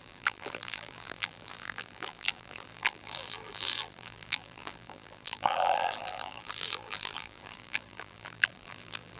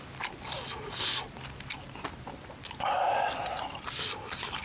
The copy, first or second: first